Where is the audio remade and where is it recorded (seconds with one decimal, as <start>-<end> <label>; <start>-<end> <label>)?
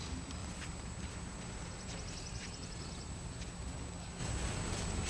0.0-0.4 recorded; 0.4-3.5 remade; 3.5-4.2 recorded; 4.2-5.1 remade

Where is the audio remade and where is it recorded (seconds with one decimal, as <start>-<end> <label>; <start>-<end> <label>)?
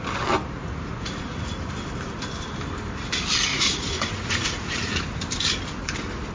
0.0-0.6 recorded; 0.6-1.6 remade; 1.6-3.5 recorded; 3.5-4.9 remade; 4.9-6.3 recorded